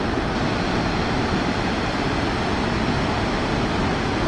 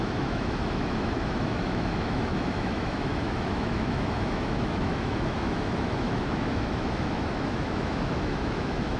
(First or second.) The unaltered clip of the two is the first